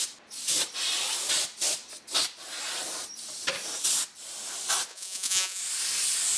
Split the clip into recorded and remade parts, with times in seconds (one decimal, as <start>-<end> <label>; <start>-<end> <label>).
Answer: 0.0-4.9 recorded; 4.9-5.6 remade; 5.6-6.4 recorded